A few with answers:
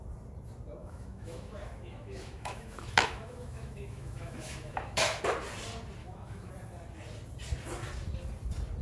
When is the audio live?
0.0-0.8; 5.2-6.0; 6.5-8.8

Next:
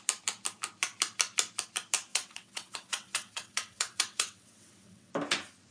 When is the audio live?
0.0-2.1; 5.1-5.7

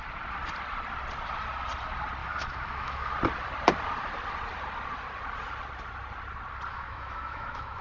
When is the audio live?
0.0-2.2; 3.1-6.7

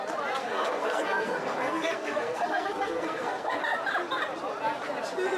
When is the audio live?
0.0-0.4; 3.6-5.4